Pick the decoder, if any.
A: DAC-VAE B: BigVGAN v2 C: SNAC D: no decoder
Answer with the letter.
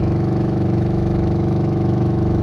A